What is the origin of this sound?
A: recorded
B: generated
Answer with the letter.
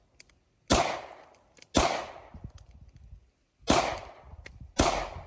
A